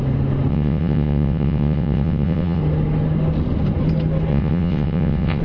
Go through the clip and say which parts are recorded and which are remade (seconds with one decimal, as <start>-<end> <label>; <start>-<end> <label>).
0.0-0.5 recorded; 0.5-2.6 remade; 2.6-4.3 recorded; 4.3-5.4 remade